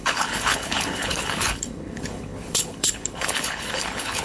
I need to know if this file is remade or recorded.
remade